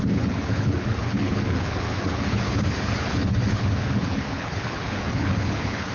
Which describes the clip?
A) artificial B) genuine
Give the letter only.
A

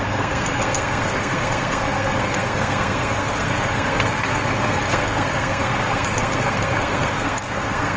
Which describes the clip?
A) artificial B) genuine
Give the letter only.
A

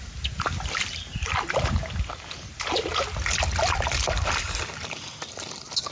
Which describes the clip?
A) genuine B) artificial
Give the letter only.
A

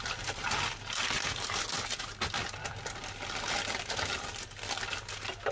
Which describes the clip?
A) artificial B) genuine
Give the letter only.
B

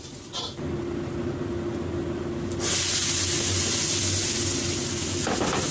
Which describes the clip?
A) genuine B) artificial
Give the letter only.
A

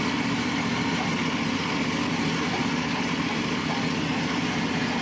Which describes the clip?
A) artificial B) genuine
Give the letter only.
B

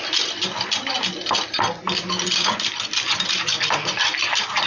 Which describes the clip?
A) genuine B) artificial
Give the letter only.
A